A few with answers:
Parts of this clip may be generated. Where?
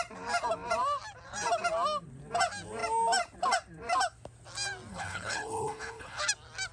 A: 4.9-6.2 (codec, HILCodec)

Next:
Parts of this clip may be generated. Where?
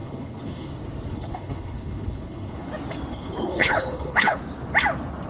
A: 0.0-0.7 (codec, HILCodec); 1.1-2.7; 3.1-4.4